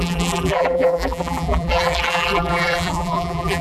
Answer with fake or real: fake